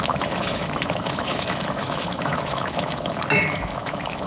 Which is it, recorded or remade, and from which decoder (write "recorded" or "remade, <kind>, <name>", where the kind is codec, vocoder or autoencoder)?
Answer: remade, autoencoder, DAC-VAE